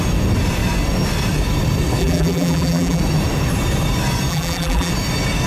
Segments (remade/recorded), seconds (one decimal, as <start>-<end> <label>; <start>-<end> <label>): 0.0-2.0 recorded; 2.0-3.0 remade; 3.0-4.3 recorded; 4.3-4.9 remade; 4.9-5.5 recorded